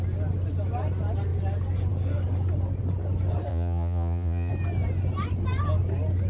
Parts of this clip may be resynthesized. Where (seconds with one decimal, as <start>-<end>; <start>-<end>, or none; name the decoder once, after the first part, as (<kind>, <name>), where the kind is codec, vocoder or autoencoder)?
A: 3.5-4.5 (vocoder, Vocos)